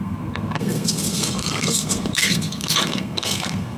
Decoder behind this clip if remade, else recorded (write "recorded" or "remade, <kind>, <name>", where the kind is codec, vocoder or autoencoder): remade, codec, SNAC